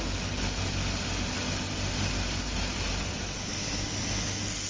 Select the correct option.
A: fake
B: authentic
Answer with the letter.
B